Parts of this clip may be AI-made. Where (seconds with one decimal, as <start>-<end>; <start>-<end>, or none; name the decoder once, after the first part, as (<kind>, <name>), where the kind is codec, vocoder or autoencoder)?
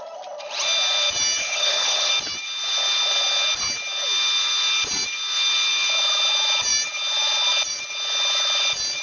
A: 1.4-2.1 (codec, HILCodec)